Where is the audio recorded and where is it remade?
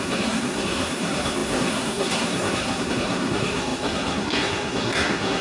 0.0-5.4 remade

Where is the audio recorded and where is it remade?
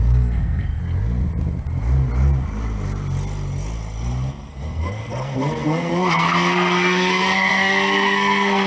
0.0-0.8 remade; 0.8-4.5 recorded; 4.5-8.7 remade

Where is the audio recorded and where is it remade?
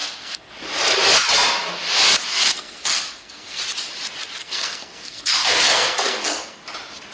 0.0-0.5 remade; 0.5-2.3 recorded; 2.3-3.6 remade; 3.6-4.4 recorded; 4.4-6.6 remade; 6.6-7.1 recorded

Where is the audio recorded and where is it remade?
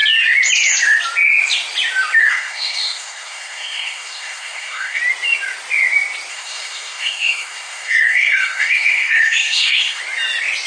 0.0-2.2 recorded; 2.2-5.0 remade; 5.0-6.3 recorded; 6.3-10.0 remade; 10.0-10.7 recorded